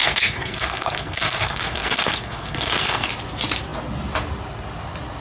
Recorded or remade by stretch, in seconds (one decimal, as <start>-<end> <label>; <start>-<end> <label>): 0.0-3.1 remade; 3.1-5.2 recorded